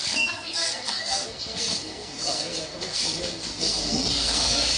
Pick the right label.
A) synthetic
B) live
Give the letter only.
A